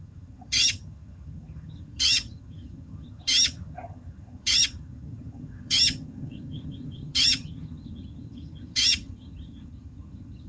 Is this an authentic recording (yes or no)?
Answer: no